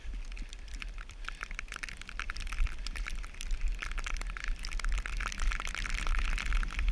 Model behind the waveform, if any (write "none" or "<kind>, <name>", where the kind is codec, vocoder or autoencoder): vocoder, BigVGAN v2